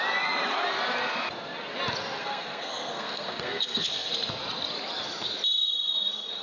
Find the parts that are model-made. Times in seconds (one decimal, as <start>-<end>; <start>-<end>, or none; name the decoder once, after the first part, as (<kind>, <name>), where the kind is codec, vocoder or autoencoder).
2.2-4.1 (codec, SNAC)

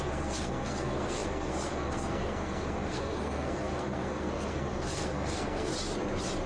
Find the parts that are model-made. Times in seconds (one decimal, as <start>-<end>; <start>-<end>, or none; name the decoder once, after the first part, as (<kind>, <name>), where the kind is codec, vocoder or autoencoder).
0.0-5.7 (codec, SNAC)